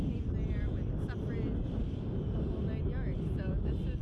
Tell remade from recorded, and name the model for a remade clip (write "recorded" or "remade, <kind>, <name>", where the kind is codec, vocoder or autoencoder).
recorded